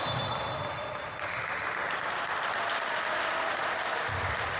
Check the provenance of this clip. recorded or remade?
recorded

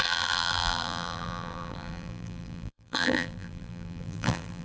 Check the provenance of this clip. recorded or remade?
remade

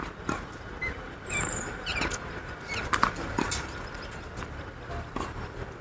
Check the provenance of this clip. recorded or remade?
recorded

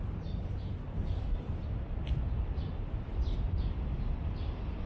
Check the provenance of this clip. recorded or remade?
remade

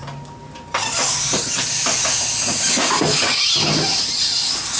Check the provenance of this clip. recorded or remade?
recorded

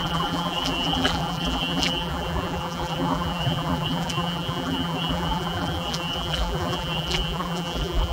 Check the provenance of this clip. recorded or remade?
remade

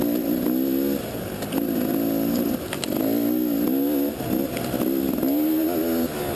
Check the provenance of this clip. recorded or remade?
recorded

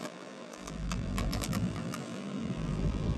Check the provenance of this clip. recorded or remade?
remade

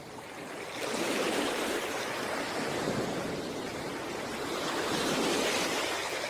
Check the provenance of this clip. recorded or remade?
remade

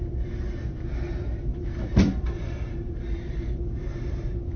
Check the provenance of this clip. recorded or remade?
remade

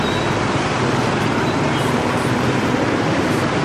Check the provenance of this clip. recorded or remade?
remade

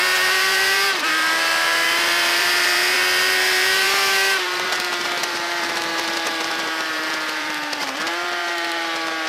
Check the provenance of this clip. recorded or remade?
remade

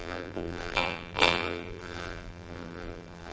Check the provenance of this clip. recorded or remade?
remade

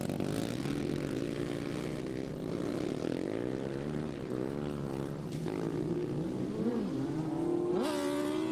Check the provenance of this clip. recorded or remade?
recorded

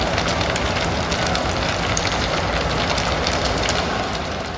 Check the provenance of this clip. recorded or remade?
remade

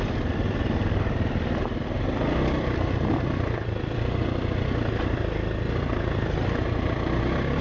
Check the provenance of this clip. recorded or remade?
remade